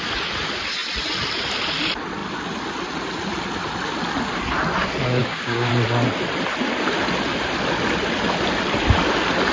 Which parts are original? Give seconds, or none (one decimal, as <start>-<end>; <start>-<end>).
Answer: 0.0-5.2; 5.7-9.5